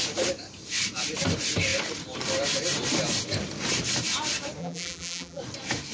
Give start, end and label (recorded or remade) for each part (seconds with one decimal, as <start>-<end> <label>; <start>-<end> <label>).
0.0-4.6 recorded; 4.6-5.4 remade; 5.4-5.9 recorded